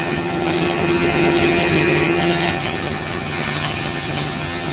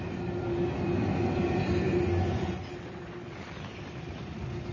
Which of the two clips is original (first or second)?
second